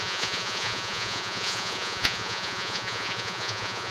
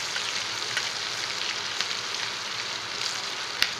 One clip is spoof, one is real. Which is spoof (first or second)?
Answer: first